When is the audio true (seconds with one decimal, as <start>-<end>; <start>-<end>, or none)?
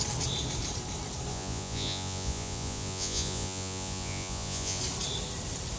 0.0-1.3; 4.8-5.8